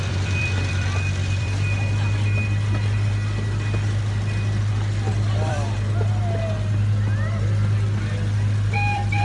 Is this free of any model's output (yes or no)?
no